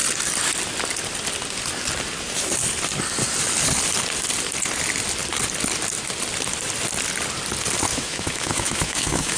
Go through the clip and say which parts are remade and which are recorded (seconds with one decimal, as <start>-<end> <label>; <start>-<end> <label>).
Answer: 0.0-7.9 recorded; 7.9-9.4 remade